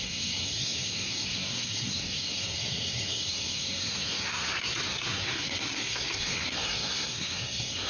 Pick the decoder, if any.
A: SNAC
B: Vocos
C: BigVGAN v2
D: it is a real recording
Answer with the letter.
A